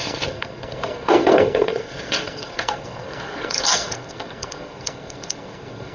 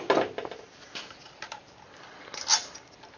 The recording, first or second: second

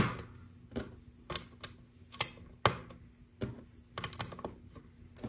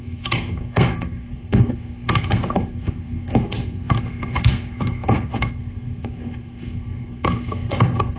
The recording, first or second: first